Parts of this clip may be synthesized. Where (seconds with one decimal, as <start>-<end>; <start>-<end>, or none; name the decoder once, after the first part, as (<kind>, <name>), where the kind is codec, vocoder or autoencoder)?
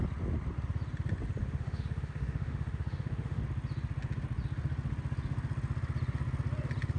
1.4-3.4 (autoencoder, DAC-VAE)